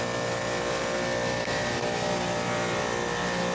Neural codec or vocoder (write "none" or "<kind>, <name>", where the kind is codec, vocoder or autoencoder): none